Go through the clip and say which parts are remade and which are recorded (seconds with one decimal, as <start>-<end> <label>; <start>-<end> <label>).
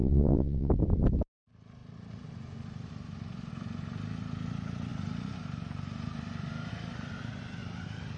0.0-0.7 remade; 0.7-8.2 recorded